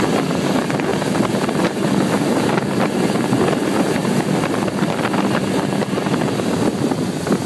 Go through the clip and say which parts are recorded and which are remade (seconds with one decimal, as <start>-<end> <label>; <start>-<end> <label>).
0.0-7.5 recorded